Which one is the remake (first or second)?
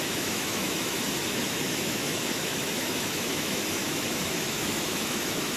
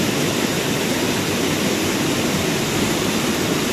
first